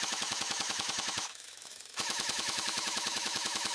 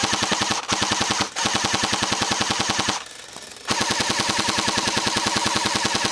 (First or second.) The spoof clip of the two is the first